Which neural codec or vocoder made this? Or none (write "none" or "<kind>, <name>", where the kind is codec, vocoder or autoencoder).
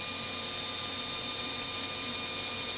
none